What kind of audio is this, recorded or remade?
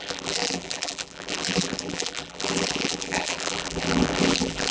remade